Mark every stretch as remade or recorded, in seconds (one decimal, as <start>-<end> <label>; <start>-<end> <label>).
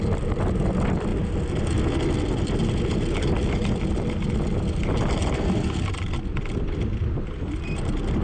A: 0.0-8.2 recorded